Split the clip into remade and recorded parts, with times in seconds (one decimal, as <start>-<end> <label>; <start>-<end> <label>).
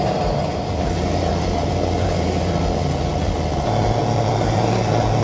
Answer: 0.0-5.2 recorded